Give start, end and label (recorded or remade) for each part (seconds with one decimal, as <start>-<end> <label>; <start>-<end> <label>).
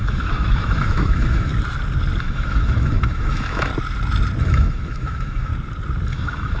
0.0-1.5 remade; 1.5-2.2 recorded; 2.2-3.7 remade; 3.7-4.4 recorded; 4.4-5.5 remade; 5.5-6.1 recorded; 6.1-6.6 remade